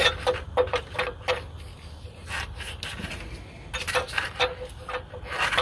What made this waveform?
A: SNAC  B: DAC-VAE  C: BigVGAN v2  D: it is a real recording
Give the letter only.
D